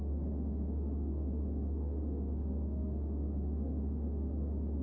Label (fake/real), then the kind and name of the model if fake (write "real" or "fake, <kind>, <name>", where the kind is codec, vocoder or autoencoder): fake, autoencoder, DAC-VAE